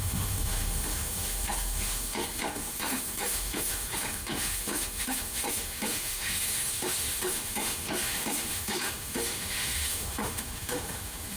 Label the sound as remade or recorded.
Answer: remade